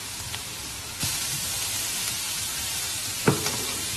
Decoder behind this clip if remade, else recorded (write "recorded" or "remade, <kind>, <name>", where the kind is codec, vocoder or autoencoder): remade, vocoder, BigVGAN v2